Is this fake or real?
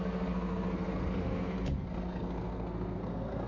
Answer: fake